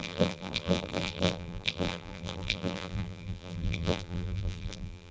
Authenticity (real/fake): fake